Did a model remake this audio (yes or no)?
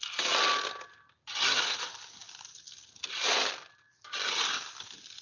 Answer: no